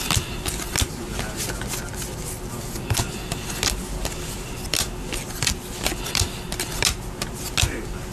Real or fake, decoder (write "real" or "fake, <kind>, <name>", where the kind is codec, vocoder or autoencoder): real